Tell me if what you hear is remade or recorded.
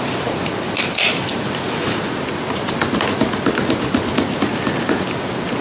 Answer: recorded